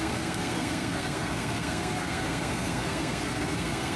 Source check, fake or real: fake